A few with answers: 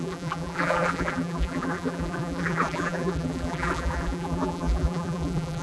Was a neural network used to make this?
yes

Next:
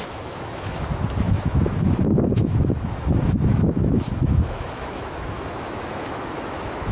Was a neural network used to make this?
yes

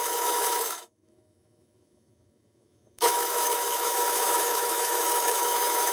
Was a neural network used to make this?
yes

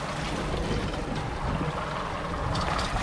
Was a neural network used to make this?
no